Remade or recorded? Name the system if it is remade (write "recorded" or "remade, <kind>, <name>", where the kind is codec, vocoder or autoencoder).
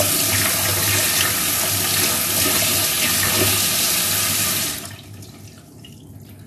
recorded